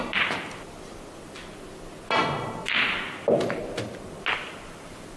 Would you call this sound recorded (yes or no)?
yes